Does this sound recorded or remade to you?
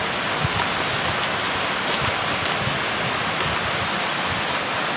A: recorded